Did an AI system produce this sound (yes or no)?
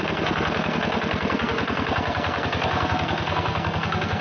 yes